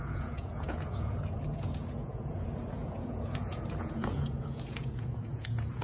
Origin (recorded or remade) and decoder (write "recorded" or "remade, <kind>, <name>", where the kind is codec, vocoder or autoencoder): remade, vocoder, Vocos